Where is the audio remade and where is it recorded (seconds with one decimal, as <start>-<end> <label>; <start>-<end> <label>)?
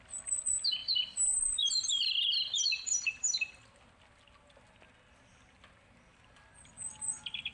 0.0-0.8 recorded; 0.8-3.9 remade; 3.9-7.5 recorded